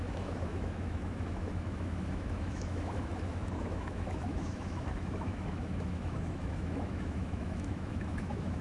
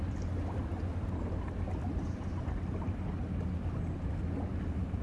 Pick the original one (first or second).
second